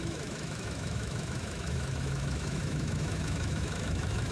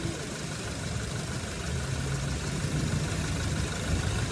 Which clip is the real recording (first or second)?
second